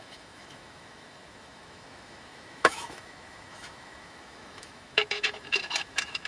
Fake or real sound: fake